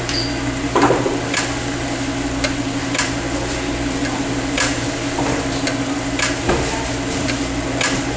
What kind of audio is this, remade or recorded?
recorded